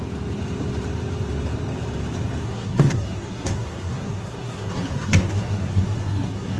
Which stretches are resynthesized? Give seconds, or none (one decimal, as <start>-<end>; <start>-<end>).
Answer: 2.4-6.6